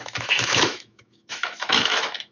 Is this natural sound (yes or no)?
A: no